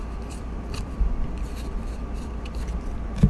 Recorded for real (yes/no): no